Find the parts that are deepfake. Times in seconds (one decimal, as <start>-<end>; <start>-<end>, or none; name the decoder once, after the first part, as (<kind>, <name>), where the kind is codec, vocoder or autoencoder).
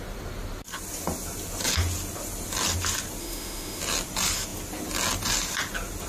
3.2-3.8 (autoencoder, DAC-VAE)